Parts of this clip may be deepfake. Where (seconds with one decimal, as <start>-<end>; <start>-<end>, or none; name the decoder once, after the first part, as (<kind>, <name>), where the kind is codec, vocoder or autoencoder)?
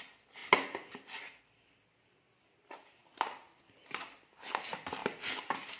none